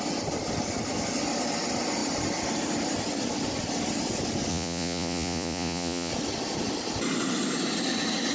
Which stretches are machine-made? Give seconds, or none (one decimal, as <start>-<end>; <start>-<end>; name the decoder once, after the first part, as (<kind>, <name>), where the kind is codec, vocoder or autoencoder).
4.5-6.1 (vocoder, Vocos)